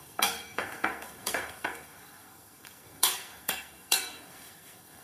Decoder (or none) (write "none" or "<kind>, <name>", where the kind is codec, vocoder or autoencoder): codec, SNAC